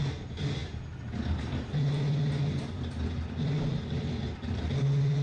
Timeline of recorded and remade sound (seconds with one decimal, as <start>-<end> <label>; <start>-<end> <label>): 0.0-5.2 recorded